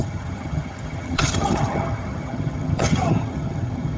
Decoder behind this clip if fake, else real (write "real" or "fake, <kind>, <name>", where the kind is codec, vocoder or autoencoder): fake, vocoder, HiFi-GAN